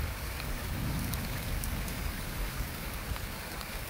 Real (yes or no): no